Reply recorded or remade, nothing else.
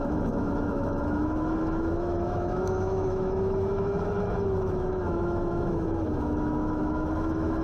remade